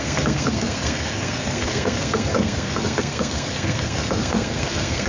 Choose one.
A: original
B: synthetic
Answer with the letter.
B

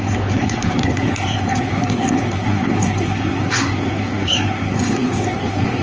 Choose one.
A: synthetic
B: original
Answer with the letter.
A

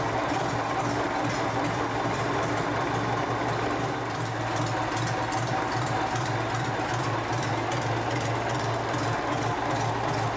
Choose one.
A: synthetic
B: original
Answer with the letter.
B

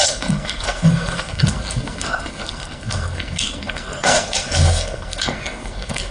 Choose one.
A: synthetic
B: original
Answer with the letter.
A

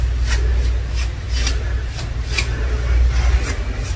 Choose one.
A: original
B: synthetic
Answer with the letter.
A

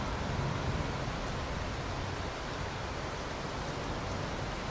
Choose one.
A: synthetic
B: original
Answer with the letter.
B